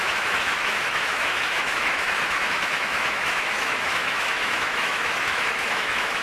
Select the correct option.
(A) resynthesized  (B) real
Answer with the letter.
A